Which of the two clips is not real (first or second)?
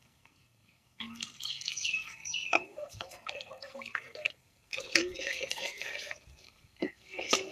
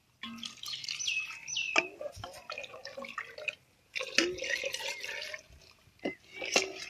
first